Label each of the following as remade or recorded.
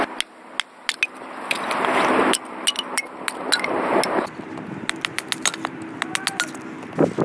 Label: recorded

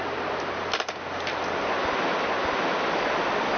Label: recorded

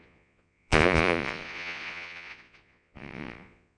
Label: remade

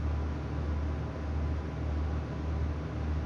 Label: recorded